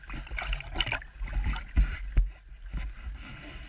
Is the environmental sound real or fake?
real